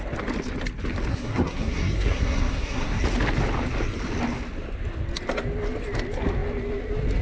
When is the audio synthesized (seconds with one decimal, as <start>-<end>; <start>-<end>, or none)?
1.1-3.0

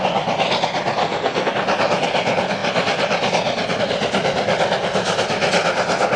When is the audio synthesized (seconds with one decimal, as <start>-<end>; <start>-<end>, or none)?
1.0-1.5

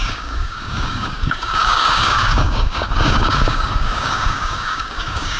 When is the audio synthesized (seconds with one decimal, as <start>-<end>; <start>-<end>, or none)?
0.0-5.4